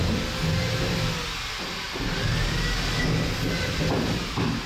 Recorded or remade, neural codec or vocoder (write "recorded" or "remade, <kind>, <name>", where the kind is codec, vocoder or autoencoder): recorded